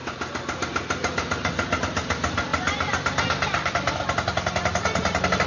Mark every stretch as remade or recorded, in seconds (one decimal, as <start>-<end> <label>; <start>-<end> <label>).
0.0-5.5 recorded